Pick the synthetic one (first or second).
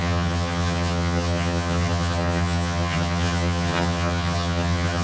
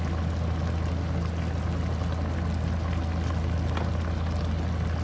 first